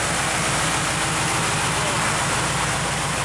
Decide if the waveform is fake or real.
real